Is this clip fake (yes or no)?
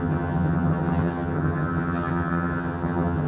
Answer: yes